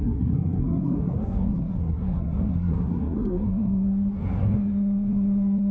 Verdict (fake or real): fake